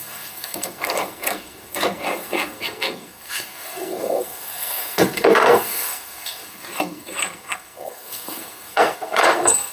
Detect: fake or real fake